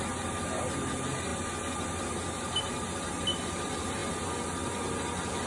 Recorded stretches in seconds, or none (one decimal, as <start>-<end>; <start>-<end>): 0.0-5.5